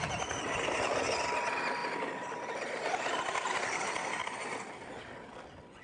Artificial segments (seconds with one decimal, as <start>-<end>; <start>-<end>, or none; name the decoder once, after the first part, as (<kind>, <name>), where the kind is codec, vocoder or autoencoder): 1.8-2.4 (vocoder, BigVGAN v2); 4.2-5.0